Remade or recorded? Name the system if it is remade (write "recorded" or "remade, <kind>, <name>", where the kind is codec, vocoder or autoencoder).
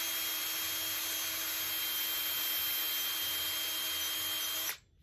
recorded